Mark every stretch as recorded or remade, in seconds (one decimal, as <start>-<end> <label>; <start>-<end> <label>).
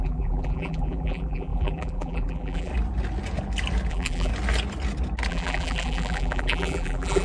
0.0-2.7 remade; 2.7-3.9 recorded; 3.9-4.3 remade; 4.3-5.3 recorded; 5.3-7.2 remade